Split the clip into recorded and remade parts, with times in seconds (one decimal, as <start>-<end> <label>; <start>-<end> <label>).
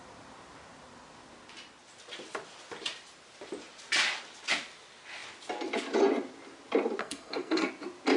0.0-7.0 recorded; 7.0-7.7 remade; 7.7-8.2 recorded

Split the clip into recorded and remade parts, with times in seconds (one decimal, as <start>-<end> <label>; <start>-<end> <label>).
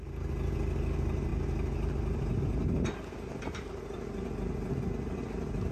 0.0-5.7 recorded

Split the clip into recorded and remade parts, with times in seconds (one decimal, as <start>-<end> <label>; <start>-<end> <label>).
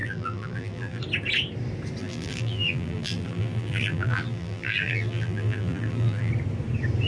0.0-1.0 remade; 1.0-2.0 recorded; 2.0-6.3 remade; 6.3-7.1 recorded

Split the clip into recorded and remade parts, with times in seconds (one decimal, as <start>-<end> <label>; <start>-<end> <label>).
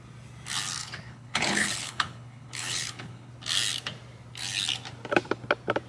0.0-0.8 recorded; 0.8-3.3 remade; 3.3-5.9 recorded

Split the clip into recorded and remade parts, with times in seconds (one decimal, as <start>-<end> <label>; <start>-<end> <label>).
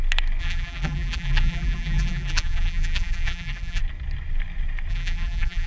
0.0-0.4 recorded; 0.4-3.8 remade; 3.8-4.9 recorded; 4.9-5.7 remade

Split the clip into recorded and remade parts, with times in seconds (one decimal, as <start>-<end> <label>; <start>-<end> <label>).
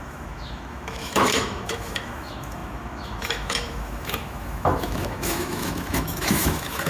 0.0-6.9 remade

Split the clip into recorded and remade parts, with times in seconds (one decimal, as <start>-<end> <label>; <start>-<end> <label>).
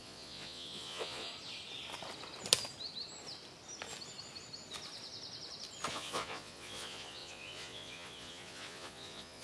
0.0-1.3 remade; 1.3-5.9 recorded; 5.9-9.4 remade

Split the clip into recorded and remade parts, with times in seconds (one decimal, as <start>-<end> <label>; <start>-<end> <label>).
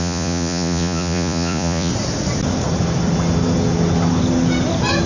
0.0-1.9 remade; 1.9-5.1 recorded